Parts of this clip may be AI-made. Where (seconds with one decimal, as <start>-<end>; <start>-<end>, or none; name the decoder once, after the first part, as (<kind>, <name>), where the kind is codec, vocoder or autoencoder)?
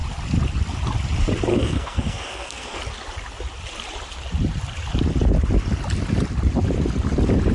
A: 1.5-2.8 (codec, SNAC)